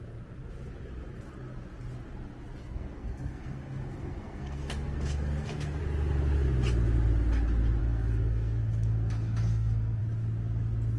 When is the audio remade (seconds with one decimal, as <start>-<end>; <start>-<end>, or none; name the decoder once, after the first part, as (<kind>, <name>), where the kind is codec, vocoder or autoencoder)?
2.6-5.8 (codec, SNAC); 7.8-10.0